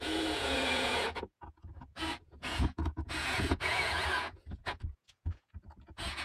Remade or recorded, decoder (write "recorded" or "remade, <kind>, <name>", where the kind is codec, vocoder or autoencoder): remade, vocoder, Vocos